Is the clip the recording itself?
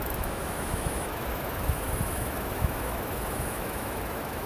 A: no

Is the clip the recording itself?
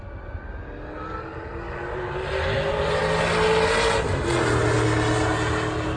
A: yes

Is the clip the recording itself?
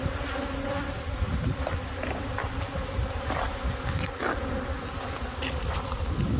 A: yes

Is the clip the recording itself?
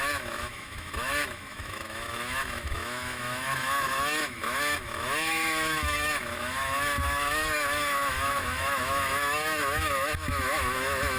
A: no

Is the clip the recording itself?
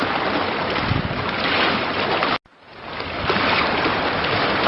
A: yes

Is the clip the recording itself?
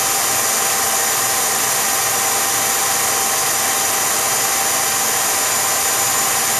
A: yes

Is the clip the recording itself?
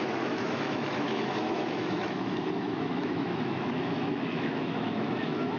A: no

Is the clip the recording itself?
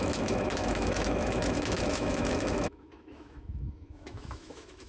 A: no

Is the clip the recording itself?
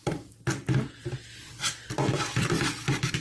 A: yes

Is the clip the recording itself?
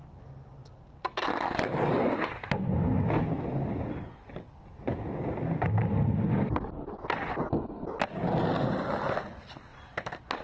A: yes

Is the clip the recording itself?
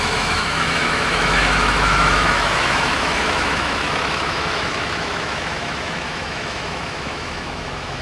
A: no